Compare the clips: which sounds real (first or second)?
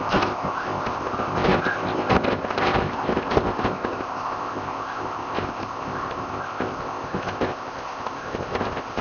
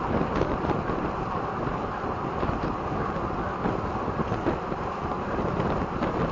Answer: second